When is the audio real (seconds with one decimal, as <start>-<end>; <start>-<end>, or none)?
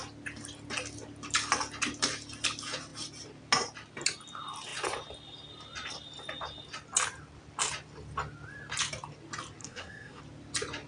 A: 0.0-9.6; 10.2-10.9